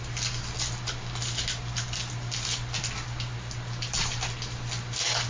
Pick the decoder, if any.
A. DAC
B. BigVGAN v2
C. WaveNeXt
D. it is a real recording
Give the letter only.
D